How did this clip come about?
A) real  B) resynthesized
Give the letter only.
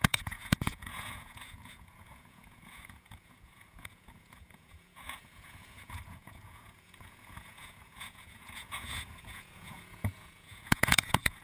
B